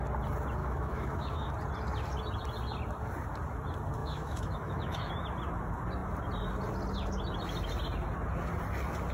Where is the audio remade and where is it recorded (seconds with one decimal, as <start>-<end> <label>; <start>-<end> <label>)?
0.0-0.6 recorded; 0.6-1.5 remade; 1.5-4.0 recorded; 4.0-5.1 remade; 5.1-9.1 recorded